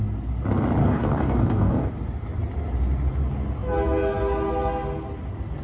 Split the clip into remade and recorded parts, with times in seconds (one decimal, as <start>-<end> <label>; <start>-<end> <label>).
0.0-0.8 recorded; 0.8-1.9 remade; 1.9-5.6 recorded